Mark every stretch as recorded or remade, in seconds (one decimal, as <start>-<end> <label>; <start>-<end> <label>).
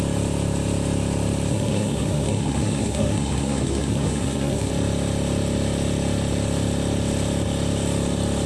0.0-1.5 recorded; 1.5-4.7 remade; 4.7-8.5 recorded